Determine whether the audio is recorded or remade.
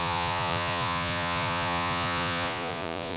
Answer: remade